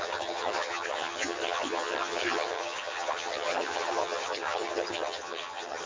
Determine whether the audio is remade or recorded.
remade